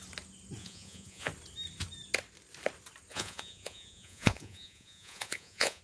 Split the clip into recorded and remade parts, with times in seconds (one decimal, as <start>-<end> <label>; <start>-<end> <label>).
0.0-0.6 recorded; 0.6-1.3 remade; 1.3-3.1 recorded; 3.1-5.8 remade